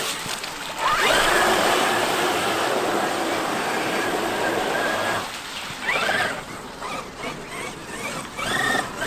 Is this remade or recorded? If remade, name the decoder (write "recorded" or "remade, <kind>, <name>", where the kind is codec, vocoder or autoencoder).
recorded